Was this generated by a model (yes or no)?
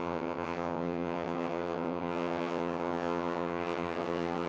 yes